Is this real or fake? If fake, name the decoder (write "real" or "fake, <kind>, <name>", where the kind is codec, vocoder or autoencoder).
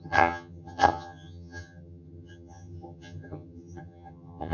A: fake, vocoder, HiFi-GAN